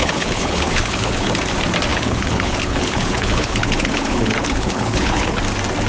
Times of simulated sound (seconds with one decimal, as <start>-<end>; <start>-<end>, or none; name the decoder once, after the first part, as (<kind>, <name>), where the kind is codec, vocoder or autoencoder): 0.0-1.3 (codec, HILCodec); 1.9-5.4